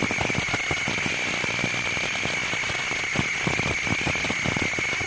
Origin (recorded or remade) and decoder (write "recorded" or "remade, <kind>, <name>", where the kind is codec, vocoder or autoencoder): recorded